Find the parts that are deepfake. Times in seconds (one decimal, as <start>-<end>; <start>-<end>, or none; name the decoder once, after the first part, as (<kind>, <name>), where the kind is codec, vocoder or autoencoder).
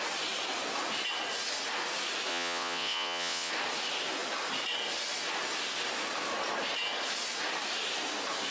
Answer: 2.3-3.5 (vocoder, WaveNeXt)